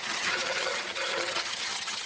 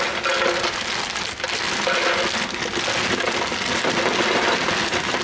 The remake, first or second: first